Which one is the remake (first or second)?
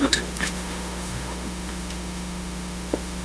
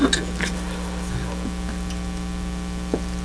first